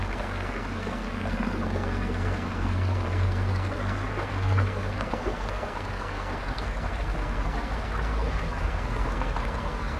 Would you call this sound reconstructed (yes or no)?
yes